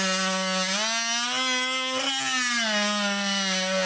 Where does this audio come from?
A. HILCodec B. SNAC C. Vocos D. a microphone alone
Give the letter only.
D